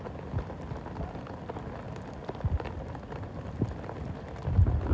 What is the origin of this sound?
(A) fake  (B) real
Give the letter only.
B